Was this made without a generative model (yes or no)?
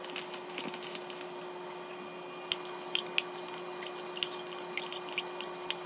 yes